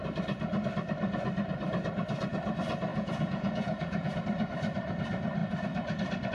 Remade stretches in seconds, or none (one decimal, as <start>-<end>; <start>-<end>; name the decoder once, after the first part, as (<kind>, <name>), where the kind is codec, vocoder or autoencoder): 2.9-4.2 (vocoder, Vocos)